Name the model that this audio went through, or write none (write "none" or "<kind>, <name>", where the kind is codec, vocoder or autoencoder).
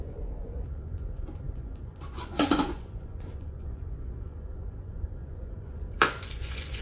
vocoder, Vocos